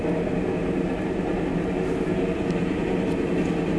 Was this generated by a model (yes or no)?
no